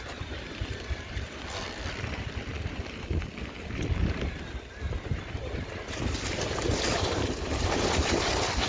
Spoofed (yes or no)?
yes